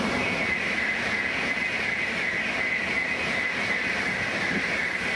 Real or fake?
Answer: real